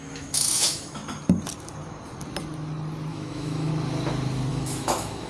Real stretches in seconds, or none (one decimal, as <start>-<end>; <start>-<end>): 1.0-3.1; 3.7-4.5